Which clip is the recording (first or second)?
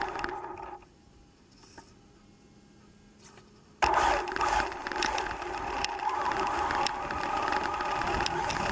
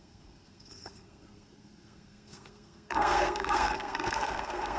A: first